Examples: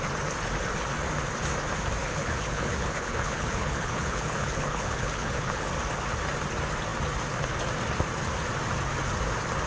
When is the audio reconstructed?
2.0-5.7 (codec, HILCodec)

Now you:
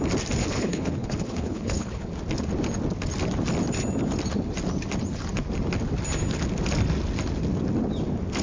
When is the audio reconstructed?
0.4-2.1 (codec, HILCodec)

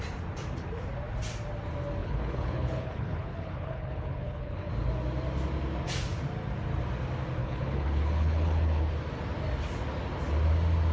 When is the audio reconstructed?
2.0-4.7 (codec, HILCodec); 7.4-8.9

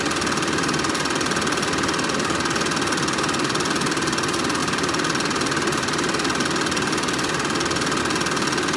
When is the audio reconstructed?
none

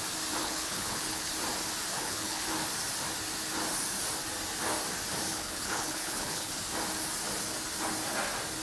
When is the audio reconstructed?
0.4-1.3 (codec, HILCodec); 1.9-2.5; 5.3-6.5

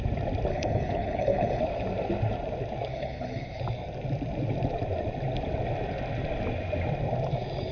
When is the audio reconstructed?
0.5-1.6 (codec, HILCodec); 2.9-3.6